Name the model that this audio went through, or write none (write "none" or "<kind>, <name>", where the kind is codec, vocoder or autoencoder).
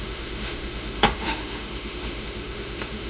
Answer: autoencoder, DAC-VAE